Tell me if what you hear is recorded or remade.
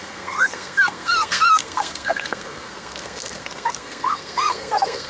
remade